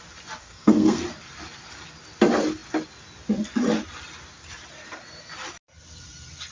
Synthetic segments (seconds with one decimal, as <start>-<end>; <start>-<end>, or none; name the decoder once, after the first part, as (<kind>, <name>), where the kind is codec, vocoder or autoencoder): 0.4-1.0 (codec, SNAC)